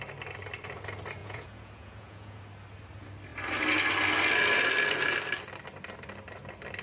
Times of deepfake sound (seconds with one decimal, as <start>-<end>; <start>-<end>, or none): 1.2-2.4